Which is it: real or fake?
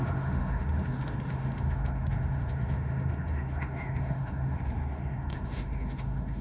fake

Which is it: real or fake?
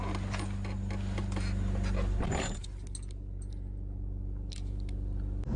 real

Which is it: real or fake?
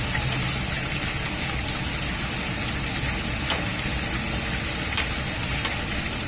real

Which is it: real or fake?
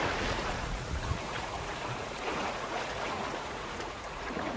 fake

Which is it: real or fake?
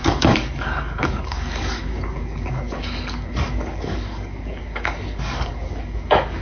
fake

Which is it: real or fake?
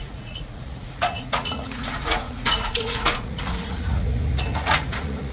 fake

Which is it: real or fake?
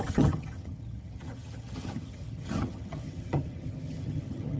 fake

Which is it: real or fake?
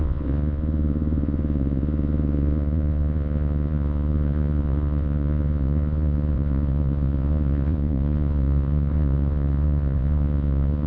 fake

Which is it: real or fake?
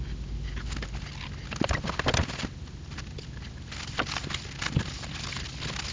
real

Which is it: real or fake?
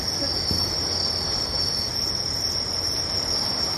real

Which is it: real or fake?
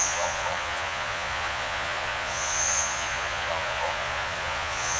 fake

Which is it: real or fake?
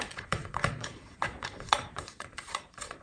fake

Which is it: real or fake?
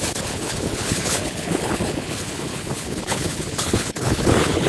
fake